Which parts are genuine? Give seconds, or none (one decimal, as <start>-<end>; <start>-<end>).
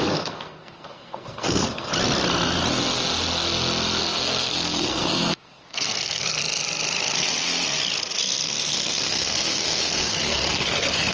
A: 1.9-4.0; 6.4-8.2